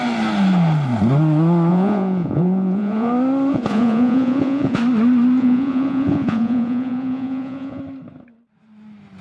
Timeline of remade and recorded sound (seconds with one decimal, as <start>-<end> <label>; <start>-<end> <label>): 0.0-1.7 recorded; 1.7-3.1 remade; 3.1-3.5 recorded; 3.5-4.8 remade; 4.8-5.4 recorded; 5.4-7.8 remade; 7.8-9.2 recorded